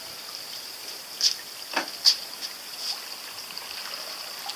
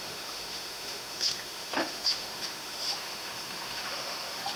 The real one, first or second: first